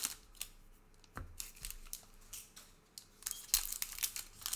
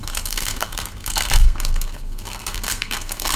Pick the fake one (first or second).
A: second